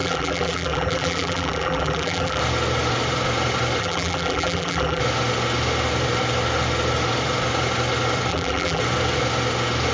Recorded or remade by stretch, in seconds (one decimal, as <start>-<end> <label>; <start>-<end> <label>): 0.0-2.4 remade; 2.4-3.8 recorded; 3.8-5.0 remade; 5.0-8.3 recorded; 8.3-8.8 remade; 8.8-9.9 recorded